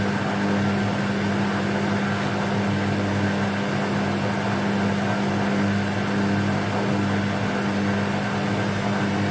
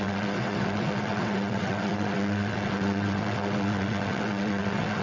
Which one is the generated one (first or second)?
second